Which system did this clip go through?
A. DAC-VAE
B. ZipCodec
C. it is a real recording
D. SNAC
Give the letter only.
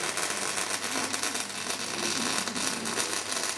C